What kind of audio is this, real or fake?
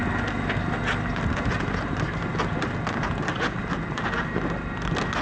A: real